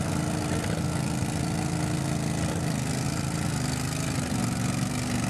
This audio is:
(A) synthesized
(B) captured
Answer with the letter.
B